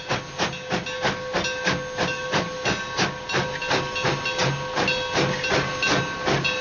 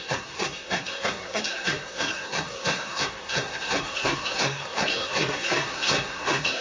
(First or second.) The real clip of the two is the first